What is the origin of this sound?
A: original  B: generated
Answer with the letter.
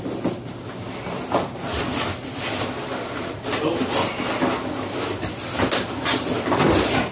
A